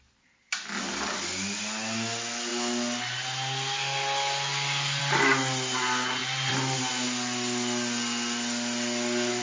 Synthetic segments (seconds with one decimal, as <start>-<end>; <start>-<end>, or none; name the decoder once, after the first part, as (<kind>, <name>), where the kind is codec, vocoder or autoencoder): 6.2-6.9 (vocoder, BigVGAN v2)